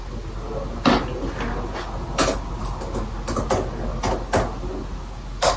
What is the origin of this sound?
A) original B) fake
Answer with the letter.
A